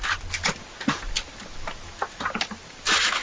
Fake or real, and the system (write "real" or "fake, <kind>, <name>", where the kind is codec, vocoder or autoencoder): real